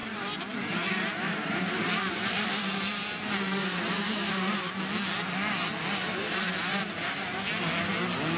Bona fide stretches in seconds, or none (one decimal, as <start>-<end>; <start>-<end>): 4.7-6.2; 7.5-8.4